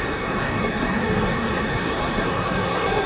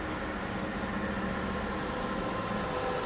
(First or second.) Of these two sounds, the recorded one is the second